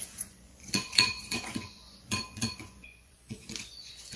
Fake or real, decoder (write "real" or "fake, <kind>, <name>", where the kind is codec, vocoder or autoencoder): fake, vocoder, Vocos